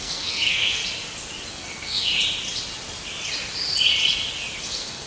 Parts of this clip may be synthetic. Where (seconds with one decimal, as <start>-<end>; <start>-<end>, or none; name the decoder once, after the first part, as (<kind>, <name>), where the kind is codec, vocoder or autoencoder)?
0.0-0.8 (codec, SNAC); 1.5-2.1; 4.6-5.1